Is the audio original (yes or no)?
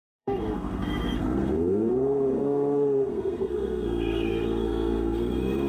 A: no